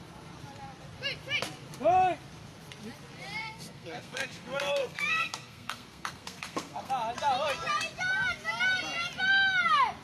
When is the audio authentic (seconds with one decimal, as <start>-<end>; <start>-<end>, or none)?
0.0-3.4; 6.9-10.0